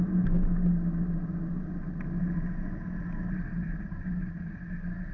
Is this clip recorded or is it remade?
recorded